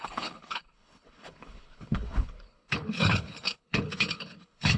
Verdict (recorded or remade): remade